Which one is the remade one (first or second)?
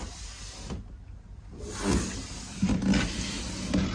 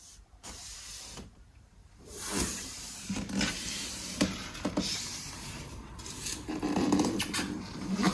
second